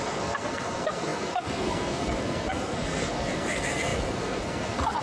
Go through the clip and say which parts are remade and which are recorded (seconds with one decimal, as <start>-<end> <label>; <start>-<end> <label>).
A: 0.0-5.0 remade